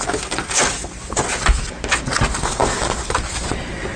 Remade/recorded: recorded